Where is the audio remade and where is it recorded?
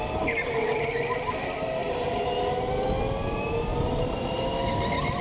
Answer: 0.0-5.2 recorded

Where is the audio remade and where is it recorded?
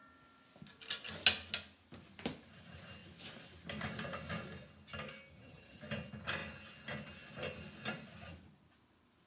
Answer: 0.0-5.3 recorded; 5.3-5.8 remade; 5.8-9.3 recorded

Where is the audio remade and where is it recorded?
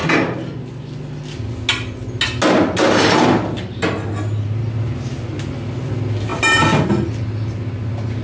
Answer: 0.0-8.2 recorded